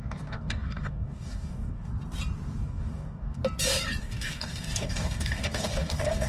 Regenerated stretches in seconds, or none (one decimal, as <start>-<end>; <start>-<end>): 0.0-1.9; 2.6-3.4; 4.0-6.3